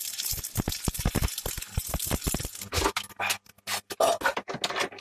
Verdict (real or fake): real